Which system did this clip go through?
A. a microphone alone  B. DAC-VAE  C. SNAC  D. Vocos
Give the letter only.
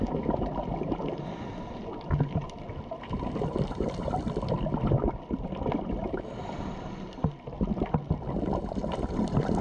A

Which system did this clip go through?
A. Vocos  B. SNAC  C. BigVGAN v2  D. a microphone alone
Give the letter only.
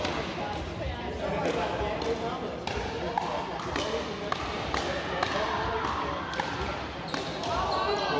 D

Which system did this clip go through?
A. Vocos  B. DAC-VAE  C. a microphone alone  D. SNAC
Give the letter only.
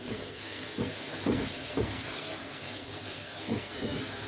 D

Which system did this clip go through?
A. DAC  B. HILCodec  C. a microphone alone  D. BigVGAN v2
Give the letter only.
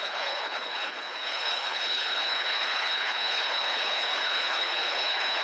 B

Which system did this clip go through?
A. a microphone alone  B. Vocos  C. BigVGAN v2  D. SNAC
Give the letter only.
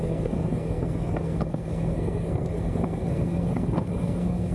D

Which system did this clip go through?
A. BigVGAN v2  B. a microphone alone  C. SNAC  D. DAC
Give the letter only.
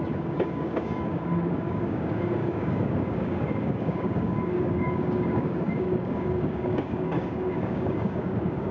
D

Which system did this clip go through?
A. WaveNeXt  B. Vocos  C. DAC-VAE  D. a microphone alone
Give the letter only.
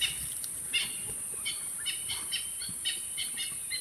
D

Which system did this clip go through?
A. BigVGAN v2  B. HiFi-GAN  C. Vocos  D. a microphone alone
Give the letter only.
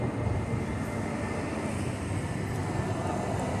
D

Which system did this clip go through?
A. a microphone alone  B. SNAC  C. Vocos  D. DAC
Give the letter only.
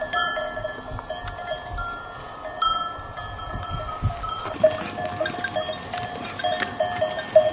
A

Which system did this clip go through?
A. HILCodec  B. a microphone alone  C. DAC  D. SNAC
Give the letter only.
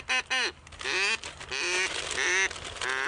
B